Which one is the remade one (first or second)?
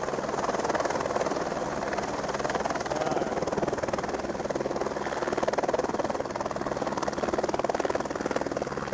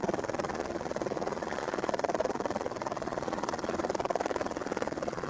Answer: second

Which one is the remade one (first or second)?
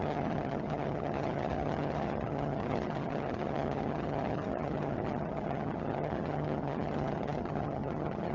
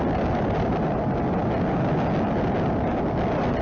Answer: first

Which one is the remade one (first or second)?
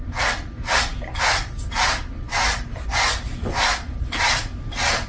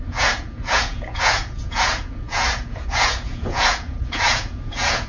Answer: second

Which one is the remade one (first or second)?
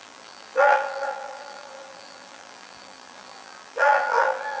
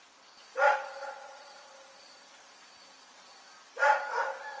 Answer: first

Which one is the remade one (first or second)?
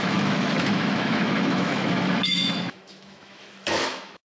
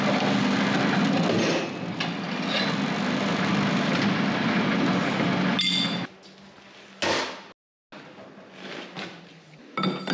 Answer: first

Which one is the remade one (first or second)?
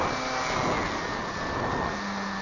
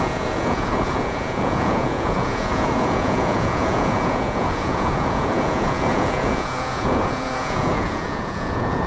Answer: second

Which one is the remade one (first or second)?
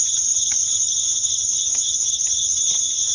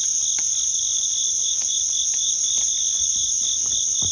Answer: first